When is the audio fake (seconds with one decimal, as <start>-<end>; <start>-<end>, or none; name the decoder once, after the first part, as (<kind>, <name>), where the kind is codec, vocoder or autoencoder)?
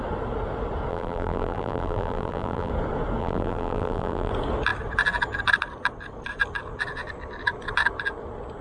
0.9-2.7 (vocoder, BigVGAN v2); 3.2-4.3